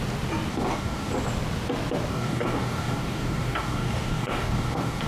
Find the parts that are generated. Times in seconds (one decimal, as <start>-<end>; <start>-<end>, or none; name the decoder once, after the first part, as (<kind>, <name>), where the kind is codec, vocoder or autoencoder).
0.5-1.1 (codec, DAC); 2.1-5.1